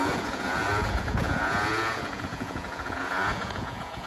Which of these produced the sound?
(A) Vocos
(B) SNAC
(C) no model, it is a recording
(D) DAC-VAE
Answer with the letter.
A